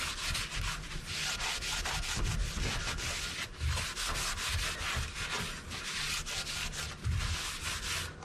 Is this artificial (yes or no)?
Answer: no